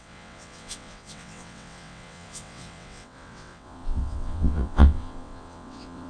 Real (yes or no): no